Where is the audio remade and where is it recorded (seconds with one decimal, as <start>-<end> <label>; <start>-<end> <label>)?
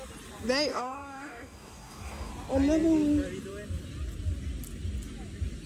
0.0-0.7 recorded; 0.7-2.3 remade; 2.3-5.7 recorded